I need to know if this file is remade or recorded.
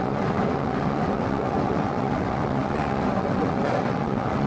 remade